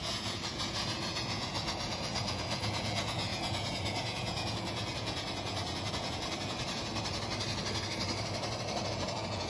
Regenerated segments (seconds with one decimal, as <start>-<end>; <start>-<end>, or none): 0.0-6.9; 8.9-9.5